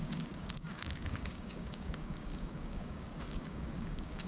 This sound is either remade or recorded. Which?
remade